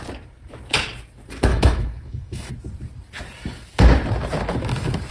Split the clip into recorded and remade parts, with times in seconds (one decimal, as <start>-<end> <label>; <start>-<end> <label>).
0.0-1.5 recorded; 1.5-2.5 remade; 2.5-5.1 recorded